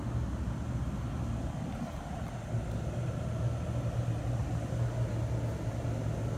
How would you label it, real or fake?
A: real